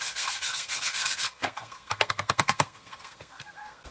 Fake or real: fake